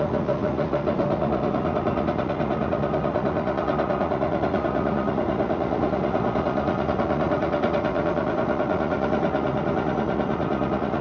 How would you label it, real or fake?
fake